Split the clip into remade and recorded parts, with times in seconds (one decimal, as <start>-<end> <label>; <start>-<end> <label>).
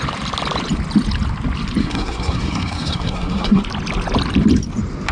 0.0-1.8 recorded; 1.8-3.6 remade; 3.6-5.1 recorded